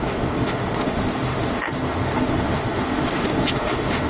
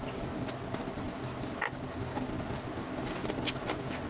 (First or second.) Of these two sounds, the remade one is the first